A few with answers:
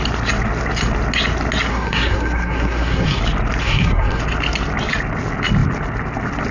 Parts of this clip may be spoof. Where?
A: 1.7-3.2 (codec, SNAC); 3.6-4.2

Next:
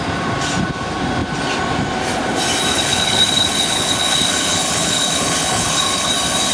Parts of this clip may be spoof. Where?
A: 2.7-6.1 (codec, HILCodec)

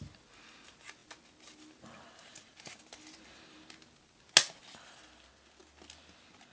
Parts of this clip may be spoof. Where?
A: none